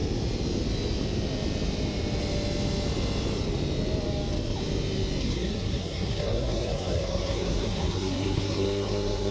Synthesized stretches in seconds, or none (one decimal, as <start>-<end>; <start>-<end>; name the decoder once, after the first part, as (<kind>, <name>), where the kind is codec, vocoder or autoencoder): 5.2-9.3 (codec, SNAC)